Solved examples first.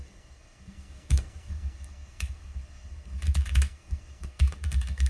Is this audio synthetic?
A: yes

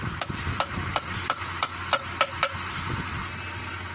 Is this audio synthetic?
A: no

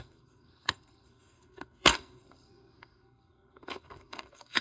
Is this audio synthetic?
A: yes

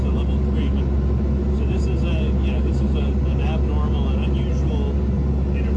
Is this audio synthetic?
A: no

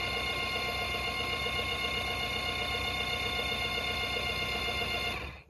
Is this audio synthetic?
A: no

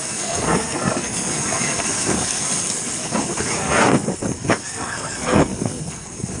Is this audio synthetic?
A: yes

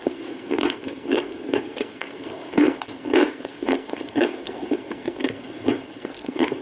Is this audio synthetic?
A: yes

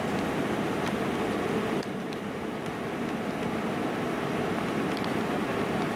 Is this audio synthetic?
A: no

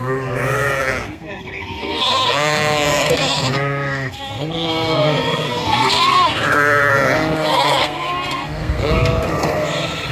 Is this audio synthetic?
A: yes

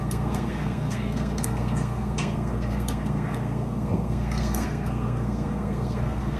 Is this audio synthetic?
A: yes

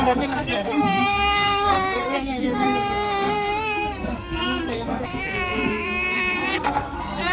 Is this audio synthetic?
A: yes